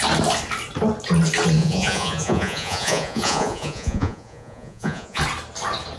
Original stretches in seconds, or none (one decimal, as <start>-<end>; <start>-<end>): 0.0-1.6; 5.2-6.0